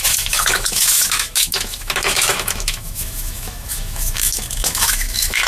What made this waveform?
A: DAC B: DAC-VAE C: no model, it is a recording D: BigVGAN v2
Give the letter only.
B